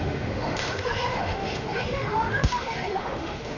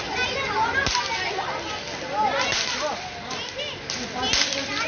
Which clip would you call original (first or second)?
second